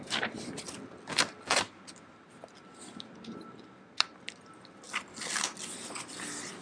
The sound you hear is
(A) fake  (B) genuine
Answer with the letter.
B